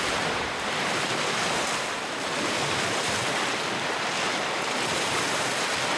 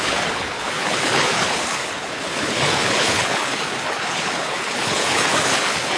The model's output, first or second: second